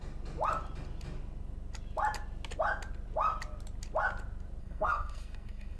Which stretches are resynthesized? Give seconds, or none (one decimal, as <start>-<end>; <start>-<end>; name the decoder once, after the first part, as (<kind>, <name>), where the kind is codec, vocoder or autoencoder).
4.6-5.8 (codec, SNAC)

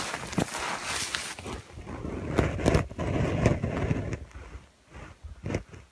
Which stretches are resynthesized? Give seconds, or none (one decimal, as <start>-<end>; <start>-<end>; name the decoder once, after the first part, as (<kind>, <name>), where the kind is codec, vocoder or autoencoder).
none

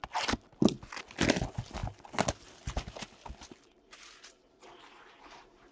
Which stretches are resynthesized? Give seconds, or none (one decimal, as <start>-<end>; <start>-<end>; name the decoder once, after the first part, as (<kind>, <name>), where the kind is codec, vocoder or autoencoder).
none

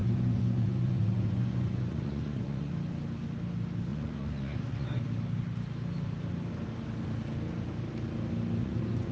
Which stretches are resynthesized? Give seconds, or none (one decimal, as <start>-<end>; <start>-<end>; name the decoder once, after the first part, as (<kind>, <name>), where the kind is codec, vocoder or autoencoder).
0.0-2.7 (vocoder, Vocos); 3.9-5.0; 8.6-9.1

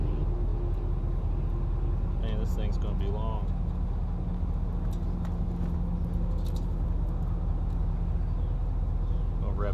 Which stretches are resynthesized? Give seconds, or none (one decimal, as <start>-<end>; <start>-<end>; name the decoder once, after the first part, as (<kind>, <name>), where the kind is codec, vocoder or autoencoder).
none

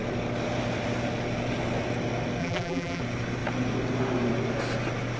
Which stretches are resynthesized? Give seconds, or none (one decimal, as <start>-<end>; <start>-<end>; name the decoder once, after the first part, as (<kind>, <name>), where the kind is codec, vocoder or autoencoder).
2.4-3.0 (vocoder, BigVGAN v2)